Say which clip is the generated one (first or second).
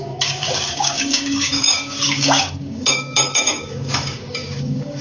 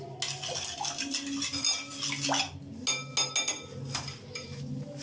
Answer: first